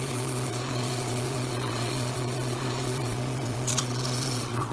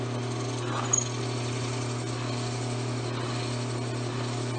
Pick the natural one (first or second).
second